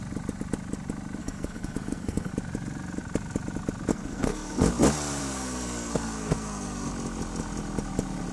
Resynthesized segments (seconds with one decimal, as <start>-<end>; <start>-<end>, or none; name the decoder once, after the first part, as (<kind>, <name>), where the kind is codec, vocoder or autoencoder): 1.2-2.3 (codec, SNAC); 3.9-4.7; 5.2-6.9